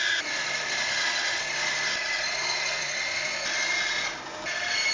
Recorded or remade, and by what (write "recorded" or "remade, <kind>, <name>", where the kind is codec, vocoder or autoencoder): recorded